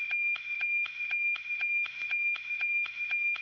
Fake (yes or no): yes